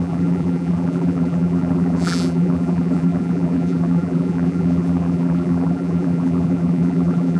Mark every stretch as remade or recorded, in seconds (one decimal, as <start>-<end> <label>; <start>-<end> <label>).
0.0-7.4 remade